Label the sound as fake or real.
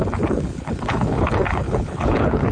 fake